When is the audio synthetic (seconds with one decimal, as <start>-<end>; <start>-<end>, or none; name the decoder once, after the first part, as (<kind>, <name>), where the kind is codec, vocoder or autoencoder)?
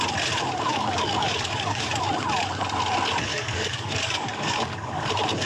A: 0.7-1.9 (codec, DAC); 3.3-5.1